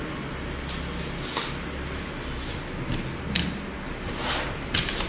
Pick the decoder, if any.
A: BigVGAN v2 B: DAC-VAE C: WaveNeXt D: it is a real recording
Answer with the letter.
D